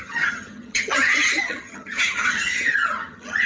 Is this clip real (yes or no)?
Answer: no